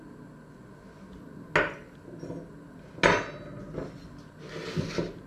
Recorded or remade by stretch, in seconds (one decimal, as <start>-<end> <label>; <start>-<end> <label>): 0.0-5.3 recorded